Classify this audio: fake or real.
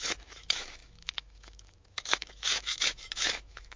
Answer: fake